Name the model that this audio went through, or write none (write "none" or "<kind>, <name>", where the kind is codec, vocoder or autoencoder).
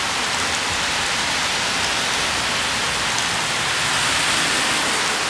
none